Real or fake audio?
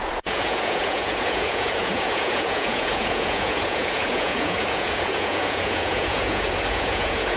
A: fake